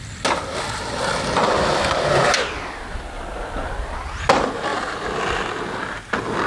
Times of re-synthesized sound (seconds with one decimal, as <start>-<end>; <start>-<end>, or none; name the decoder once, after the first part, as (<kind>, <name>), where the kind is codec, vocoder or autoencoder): none